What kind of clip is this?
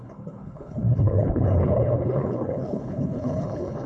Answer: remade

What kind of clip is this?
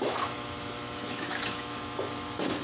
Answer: remade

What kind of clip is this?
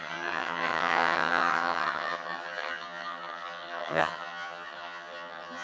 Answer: remade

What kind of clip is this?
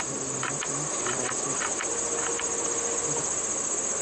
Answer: recorded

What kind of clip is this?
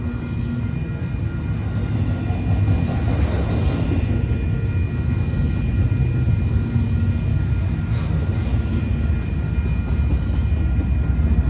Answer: recorded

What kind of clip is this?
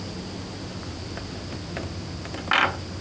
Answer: recorded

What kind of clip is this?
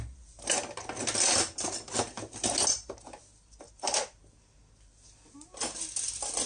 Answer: recorded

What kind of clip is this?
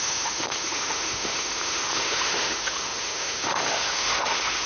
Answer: remade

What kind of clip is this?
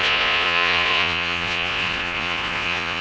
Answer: remade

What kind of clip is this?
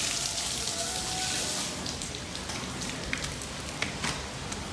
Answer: recorded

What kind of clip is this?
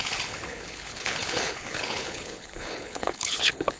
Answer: remade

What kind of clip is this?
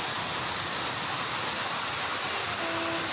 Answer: recorded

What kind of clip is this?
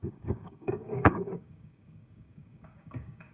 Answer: remade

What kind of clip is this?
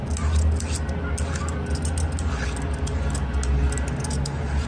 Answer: recorded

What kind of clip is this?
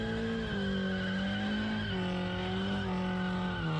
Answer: recorded